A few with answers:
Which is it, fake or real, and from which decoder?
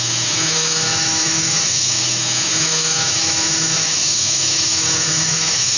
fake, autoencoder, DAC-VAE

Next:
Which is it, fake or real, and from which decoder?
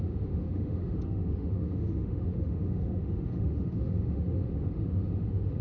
fake, autoencoder, DAC-VAE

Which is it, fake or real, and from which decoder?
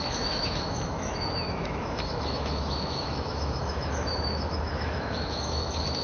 fake, autoencoder, DAC-VAE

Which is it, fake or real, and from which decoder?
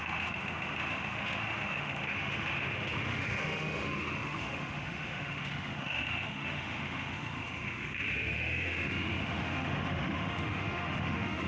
fake, autoencoder, DAC-VAE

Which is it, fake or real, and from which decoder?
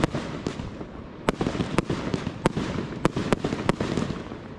real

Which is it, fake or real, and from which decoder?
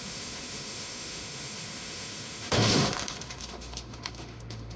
fake, autoencoder, DAC-VAE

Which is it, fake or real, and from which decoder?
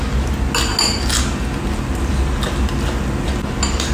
real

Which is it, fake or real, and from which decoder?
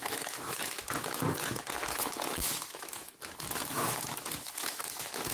fake, autoencoder, DAC-VAE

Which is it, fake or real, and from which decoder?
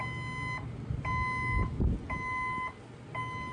real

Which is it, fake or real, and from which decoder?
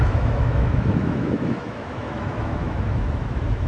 fake, autoencoder, DAC-VAE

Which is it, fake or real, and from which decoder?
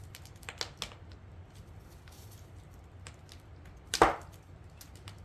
real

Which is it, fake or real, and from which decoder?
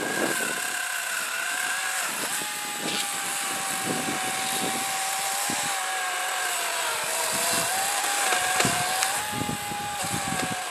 real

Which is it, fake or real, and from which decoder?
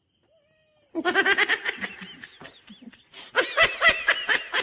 real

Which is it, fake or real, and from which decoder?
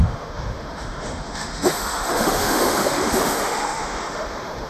fake, autoencoder, DAC-VAE